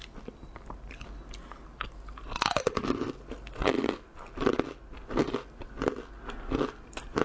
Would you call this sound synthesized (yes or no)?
no